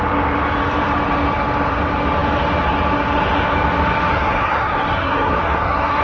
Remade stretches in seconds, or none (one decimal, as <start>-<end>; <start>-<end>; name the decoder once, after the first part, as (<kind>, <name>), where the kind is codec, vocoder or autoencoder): 4.1-6.0 (codec, SNAC)